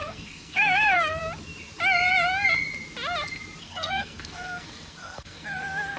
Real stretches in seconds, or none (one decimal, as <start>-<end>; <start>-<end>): 1.2-3.6